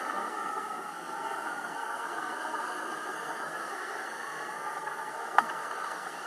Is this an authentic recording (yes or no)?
no